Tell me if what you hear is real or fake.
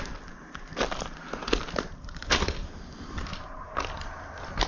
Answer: fake